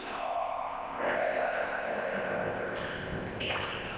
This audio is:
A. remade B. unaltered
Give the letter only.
A